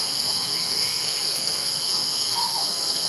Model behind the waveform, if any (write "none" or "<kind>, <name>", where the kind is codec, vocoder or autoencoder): codec, SNAC